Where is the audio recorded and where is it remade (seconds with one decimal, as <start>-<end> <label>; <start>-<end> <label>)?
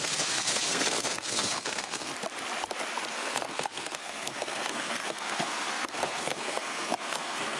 0.0-2.1 remade; 2.1-3.1 recorded; 3.1-7.6 remade